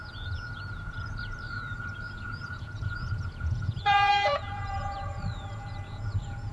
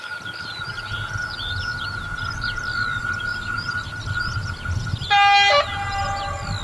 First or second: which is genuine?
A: second